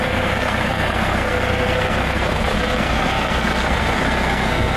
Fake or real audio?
fake